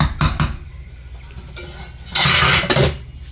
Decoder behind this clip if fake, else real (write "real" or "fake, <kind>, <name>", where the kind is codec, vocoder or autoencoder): real